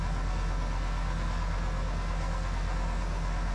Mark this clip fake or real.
fake